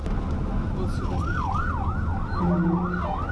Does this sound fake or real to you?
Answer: real